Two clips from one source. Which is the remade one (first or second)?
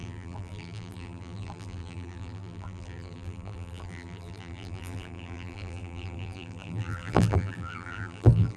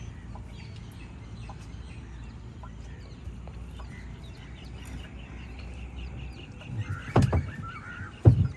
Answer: first